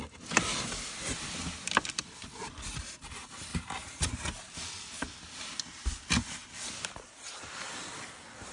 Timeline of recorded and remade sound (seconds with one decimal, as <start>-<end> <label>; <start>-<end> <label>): 0.0-3.5 recorded; 3.5-4.1 remade; 4.1-8.5 recorded